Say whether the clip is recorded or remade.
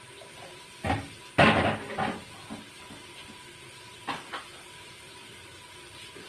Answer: recorded